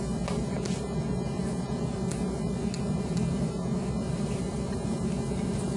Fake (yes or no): no